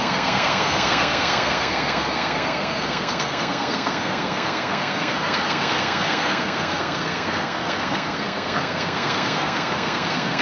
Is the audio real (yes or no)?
no